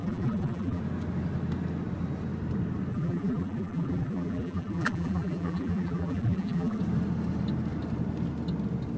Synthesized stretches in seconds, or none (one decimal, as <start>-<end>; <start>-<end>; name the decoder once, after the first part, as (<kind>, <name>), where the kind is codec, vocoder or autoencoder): 0.0-0.8 (vocoder, BigVGAN v2); 2.9-6.8